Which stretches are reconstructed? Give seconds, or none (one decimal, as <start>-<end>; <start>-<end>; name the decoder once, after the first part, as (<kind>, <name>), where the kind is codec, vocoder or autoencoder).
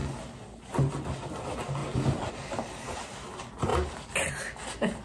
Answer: none